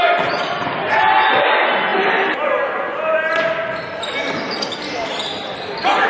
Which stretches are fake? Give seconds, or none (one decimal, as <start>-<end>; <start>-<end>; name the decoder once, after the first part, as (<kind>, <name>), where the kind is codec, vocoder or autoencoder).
none